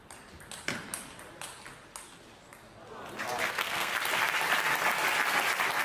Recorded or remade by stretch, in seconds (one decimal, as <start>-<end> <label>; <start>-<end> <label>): 0.0-3.5 recorded; 3.5-3.9 remade; 3.9-5.8 recorded